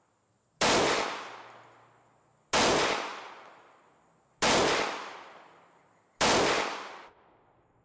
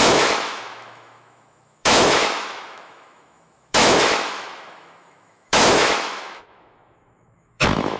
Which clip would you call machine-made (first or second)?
second